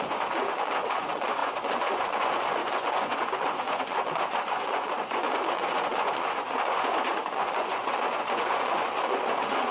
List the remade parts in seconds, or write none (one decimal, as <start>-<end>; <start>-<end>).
0.0-9.7